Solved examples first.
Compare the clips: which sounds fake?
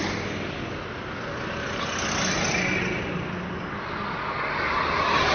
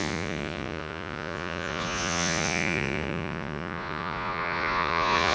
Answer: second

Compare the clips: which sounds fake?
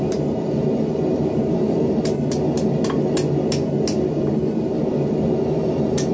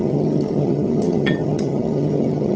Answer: second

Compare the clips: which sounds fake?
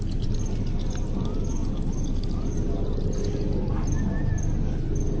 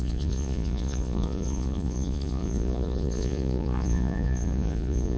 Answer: second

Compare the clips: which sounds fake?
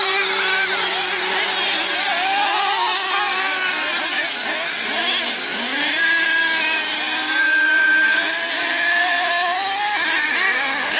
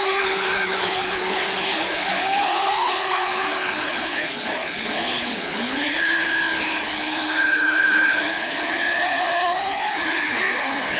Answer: second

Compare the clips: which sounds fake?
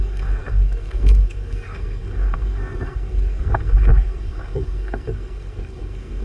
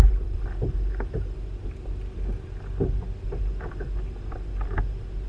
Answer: first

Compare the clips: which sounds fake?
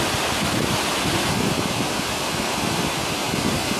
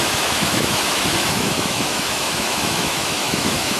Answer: second